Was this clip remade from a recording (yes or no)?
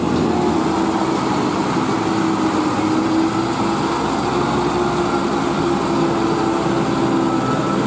no